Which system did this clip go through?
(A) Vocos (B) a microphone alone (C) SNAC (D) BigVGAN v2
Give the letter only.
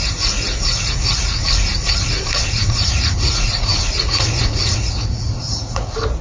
A